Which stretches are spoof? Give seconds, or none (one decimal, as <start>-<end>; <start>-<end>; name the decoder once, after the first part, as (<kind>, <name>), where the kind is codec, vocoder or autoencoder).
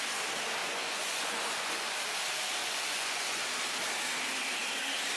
0.6-2.0 (vocoder, Vocos); 2.6-3.5